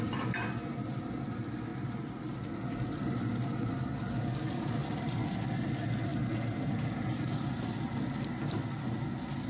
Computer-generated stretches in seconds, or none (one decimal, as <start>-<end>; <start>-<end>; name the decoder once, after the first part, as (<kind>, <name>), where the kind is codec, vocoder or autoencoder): none